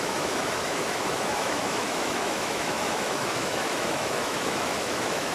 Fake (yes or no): yes